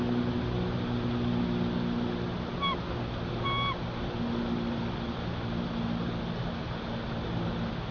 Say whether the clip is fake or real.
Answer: real